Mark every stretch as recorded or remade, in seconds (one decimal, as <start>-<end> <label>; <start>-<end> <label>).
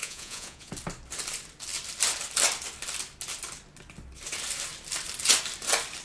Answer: 0.0-0.7 remade; 0.7-6.0 recorded